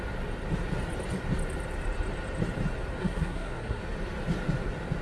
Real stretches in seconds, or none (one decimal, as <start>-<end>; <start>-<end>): 0.0-3.0; 3.8-5.0